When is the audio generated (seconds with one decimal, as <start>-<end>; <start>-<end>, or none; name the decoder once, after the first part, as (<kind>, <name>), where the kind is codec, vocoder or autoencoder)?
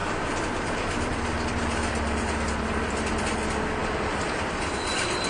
0.0-3.2 (vocoder, BigVGAN v2)